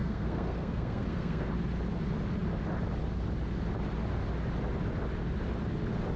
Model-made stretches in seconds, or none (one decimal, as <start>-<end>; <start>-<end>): 0.0-1.5